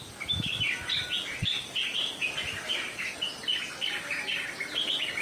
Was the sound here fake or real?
real